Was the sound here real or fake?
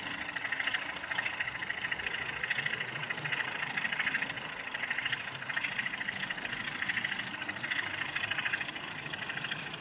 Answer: real